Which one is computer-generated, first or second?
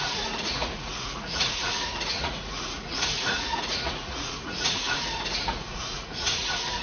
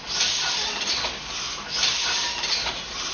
first